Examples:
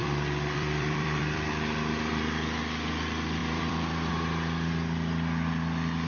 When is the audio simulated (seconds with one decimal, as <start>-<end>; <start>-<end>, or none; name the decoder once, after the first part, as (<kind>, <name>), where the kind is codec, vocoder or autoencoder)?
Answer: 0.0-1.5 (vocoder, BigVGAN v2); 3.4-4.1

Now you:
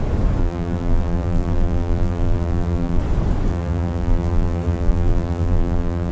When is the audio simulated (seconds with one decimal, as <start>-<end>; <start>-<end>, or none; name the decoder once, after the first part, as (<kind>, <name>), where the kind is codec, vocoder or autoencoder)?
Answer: 0.4-3.0 (vocoder, BigVGAN v2); 3.5-6.1

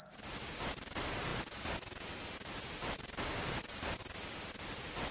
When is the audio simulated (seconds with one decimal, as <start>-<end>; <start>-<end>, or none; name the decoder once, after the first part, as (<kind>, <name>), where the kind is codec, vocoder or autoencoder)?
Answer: none

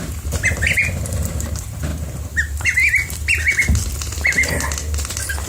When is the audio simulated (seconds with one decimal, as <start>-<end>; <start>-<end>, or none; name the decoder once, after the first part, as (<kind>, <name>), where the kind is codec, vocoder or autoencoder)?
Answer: none